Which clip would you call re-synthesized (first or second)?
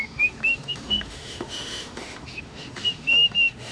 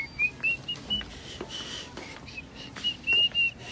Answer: first